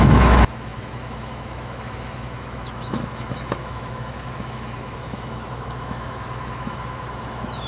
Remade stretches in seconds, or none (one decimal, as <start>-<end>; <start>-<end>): 0.0-7.7